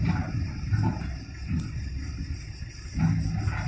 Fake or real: real